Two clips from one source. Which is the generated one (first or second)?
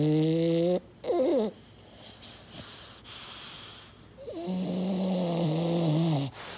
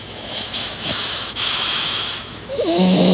second